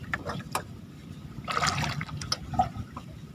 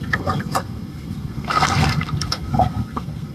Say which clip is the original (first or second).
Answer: first